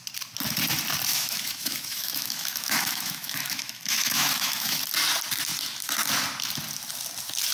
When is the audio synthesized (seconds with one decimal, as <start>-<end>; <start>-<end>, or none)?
1.1-4.8